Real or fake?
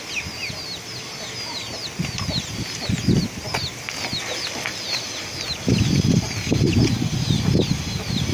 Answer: real